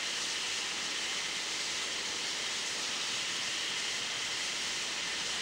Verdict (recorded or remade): recorded